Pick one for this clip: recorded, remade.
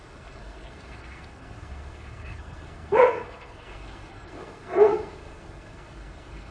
remade